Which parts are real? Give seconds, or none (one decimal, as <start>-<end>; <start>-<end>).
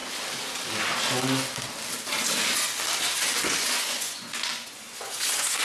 0.0-3.4